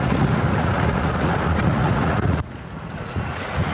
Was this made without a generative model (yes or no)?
no